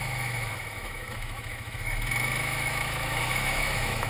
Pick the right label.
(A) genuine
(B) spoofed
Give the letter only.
B